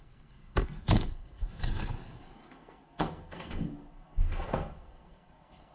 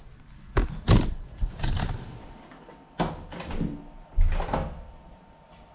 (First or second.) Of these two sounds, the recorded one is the second